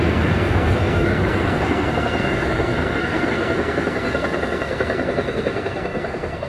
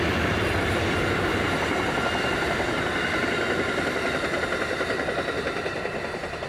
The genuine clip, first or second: second